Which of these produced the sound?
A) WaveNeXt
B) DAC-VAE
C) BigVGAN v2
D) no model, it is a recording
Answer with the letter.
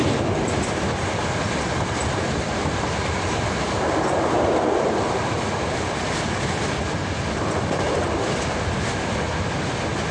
C